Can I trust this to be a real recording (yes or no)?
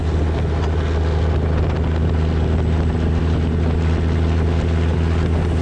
yes